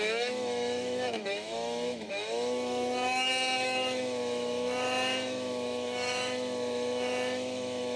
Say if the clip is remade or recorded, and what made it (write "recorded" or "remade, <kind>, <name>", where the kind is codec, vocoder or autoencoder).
remade, autoencoder, DAC-VAE